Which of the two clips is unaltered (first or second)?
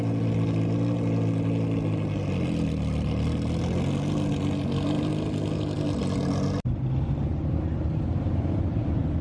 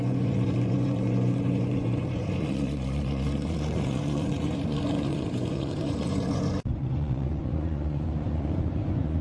first